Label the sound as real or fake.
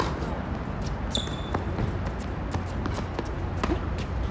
real